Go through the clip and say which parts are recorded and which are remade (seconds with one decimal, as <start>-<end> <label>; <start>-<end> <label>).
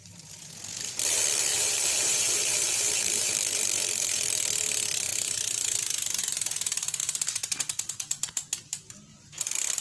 0.0-1.5 recorded; 1.5-4.3 remade; 4.3-5.1 recorded; 5.1-6.2 remade; 6.2-9.8 recorded